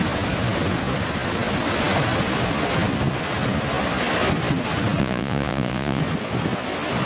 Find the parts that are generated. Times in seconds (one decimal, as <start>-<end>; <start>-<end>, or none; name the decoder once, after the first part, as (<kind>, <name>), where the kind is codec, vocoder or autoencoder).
5.0-6.0 (vocoder, Vocos)